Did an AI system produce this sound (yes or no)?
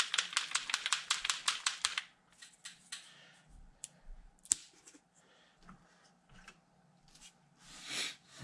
yes